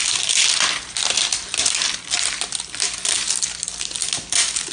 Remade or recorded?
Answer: recorded